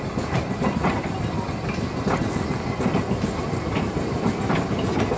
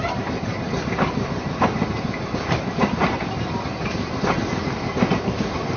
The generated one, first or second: second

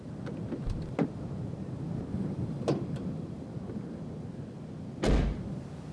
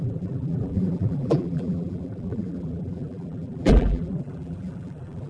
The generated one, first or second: second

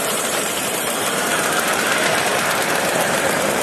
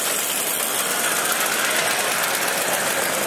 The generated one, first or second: first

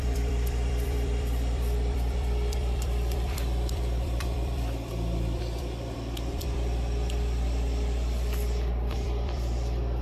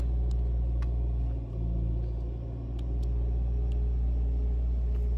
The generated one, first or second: first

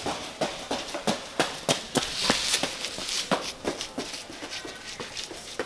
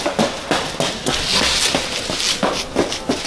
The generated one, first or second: first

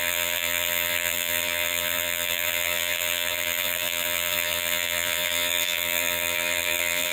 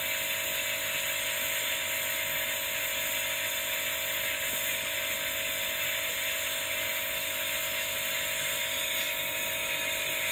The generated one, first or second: first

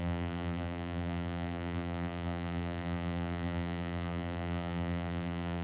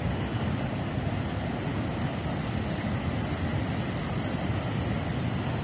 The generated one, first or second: first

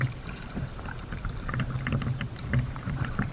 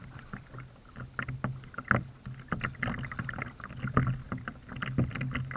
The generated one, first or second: first